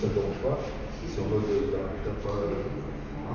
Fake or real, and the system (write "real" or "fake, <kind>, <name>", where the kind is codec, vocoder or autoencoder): real